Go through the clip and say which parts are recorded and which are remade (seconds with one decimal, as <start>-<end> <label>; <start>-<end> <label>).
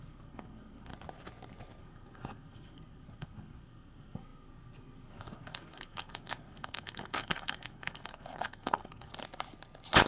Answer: 0.0-0.9 remade; 0.9-1.8 recorded; 1.8-9.1 remade; 9.1-10.1 recorded